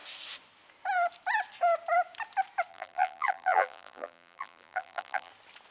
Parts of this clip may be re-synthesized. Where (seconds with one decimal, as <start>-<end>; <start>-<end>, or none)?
2.7-5.3